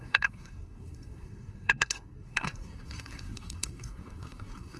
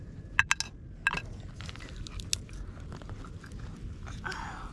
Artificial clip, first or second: first